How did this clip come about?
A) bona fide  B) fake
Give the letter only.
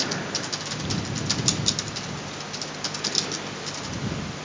A